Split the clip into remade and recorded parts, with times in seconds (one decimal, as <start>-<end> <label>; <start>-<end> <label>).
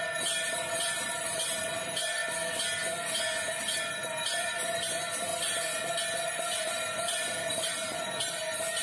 0.0-2.2 remade; 2.2-3.6 recorded; 3.6-5.3 remade; 5.3-6.2 recorded; 6.2-8.8 remade